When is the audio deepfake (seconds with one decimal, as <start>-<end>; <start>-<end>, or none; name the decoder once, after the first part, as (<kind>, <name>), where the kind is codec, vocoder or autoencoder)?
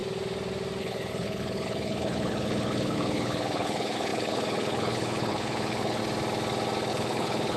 0.8-6.0 (codec, HILCodec); 6.9-7.6